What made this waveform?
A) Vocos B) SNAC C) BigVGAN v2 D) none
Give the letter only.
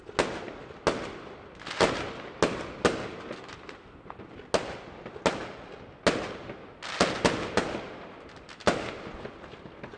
D